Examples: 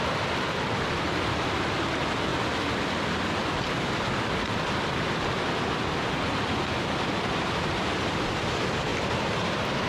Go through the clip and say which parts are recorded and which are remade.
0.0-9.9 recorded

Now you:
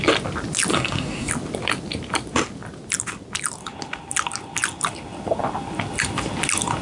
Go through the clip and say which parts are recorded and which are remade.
0.0-0.7 recorded; 0.7-1.3 remade; 1.3-6.8 recorded

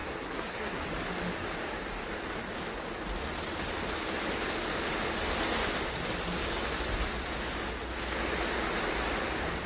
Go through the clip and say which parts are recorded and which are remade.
0.0-0.8 remade; 0.8-9.7 recorded

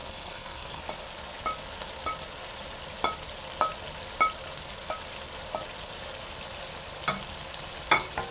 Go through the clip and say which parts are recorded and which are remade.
0.0-0.8 remade; 0.8-8.3 recorded

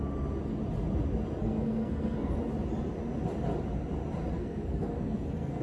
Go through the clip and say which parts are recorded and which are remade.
0.0-1.4 recorded; 1.4-2.4 remade; 2.4-4.3 recorded; 4.3-5.6 remade

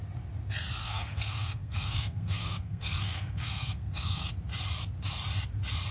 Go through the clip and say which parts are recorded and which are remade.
0.0-0.8 recorded; 0.8-4.3 remade; 4.3-5.9 recorded

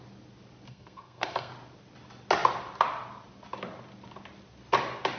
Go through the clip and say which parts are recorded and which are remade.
0.0-0.7 recorded; 0.7-1.5 remade; 1.5-5.2 recorded

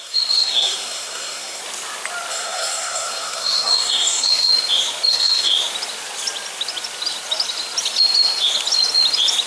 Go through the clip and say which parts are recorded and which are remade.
0.0-1.6 remade; 1.6-2.3 recorded; 2.3-4.5 remade; 4.5-5.1 recorded; 5.1-5.5 remade; 5.5-9.5 recorded